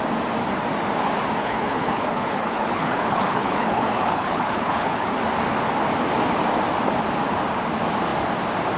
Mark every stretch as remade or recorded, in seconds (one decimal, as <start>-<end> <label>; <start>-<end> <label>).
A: 0.0-1.4 recorded; 1.4-5.2 remade; 5.2-8.8 recorded

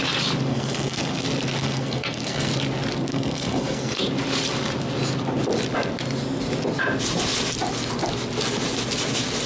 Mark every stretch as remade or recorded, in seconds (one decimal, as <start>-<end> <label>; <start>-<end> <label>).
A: 0.0-0.5 recorded; 0.5-1.2 remade; 1.2-1.6 recorded; 1.6-2.5 remade; 2.5-3.1 recorded; 3.1-4.0 remade; 4.0-9.5 recorded